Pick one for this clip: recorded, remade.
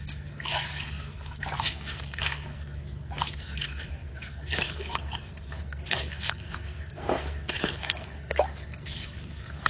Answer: remade